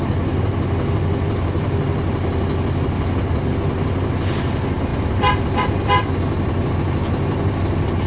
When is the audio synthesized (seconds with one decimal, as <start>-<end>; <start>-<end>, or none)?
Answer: 4.9-6.7

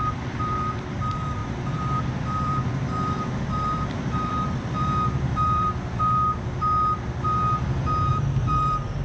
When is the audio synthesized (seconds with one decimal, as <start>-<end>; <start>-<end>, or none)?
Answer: 0.0-5.7; 8.1-9.0